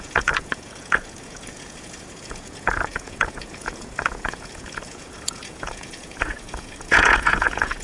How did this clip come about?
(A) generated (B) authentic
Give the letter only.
A